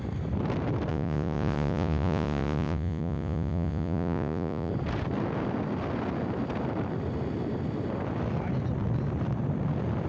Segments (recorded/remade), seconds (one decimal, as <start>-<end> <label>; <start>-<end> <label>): 0.0-0.9 recorded; 0.9-4.7 remade; 4.7-10.1 recorded